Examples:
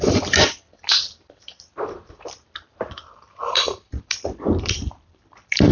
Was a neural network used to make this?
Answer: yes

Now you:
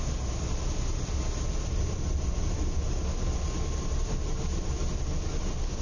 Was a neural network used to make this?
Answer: no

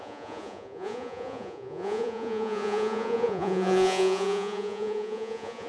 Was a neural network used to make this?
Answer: yes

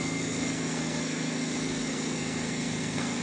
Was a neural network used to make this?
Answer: yes